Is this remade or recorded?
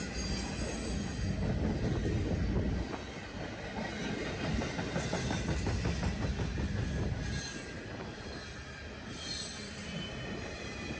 recorded